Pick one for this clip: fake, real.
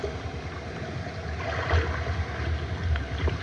real